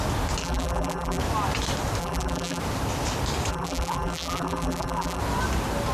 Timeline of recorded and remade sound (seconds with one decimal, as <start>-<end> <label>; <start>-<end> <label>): 0.0-0.4 recorded; 0.4-1.2 remade; 1.2-2.0 recorded; 2.0-2.6 remade; 2.6-3.5 recorded; 3.5-5.2 remade; 5.2-5.9 recorded